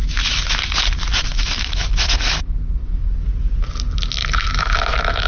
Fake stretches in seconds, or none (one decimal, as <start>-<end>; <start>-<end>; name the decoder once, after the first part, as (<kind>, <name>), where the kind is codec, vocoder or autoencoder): 0.0-0.6 (autoencoder, DAC-VAE); 1.3-3.1; 4.2-5.3